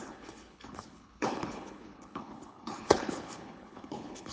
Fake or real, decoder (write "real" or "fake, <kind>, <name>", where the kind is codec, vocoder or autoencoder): fake, codec, HILCodec